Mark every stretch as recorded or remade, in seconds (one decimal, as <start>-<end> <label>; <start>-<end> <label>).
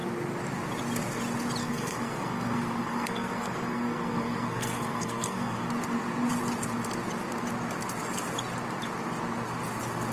0.0-1.6 recorded; 1.6-5.7 remade; 5.7-10.1 recorded